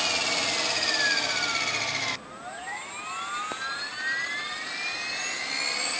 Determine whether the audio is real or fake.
real